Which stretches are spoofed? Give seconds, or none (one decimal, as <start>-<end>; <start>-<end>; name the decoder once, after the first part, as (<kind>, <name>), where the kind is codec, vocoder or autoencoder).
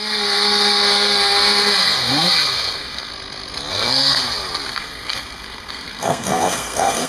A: 0.0-3.1 (codec, SNAC); 3.7-4.2; 4.7-7.1